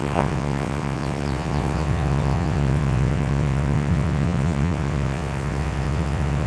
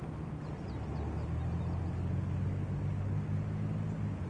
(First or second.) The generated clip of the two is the first